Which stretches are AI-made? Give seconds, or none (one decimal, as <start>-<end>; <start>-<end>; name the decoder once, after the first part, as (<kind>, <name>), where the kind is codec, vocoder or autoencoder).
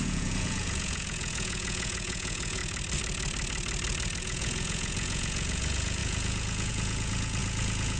0.0-2.6 (vocoder, Vocos); 4.2-8.0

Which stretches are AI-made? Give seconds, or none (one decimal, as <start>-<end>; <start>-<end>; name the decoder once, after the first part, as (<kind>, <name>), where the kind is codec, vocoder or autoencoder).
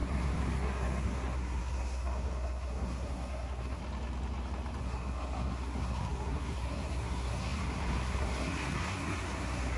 0.0-3.8 (codec, SNAC); 4.8-9.8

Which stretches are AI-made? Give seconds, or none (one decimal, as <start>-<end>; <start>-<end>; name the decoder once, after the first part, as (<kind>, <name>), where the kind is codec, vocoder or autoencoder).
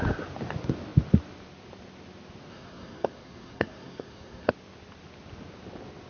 2.5-4.5 (codec, SNAC)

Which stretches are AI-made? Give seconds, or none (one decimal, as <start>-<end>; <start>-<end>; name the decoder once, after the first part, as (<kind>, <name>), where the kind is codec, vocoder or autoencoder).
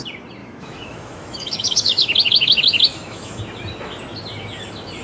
0.4-3.4 (autoencoder, DAC-VAE)